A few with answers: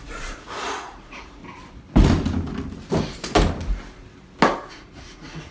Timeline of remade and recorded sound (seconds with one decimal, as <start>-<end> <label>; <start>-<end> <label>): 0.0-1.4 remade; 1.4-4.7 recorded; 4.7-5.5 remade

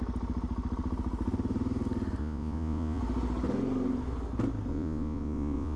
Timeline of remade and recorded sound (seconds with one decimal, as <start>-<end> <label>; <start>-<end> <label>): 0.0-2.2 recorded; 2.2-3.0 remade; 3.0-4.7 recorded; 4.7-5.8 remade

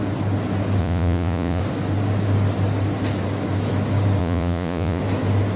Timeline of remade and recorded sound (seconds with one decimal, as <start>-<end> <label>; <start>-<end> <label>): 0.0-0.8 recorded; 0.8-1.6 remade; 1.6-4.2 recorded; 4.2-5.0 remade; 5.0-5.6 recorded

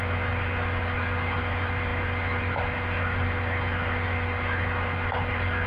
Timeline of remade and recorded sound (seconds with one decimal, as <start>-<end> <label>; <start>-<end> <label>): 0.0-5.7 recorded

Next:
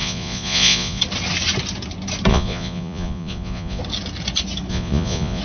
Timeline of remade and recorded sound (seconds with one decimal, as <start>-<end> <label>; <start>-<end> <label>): 0.0-1.0 remade; 1.0-2.3 recorded; 2.3-3.8 remade; 3.8-4.7 recorded; 4.7-5.4 remade

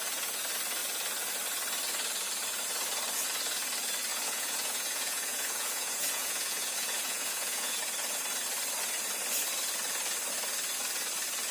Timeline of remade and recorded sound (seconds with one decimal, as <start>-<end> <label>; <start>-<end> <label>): 0.0-4.1 recorded; 4.1-7.8 remade; 7.8-11.5 recorded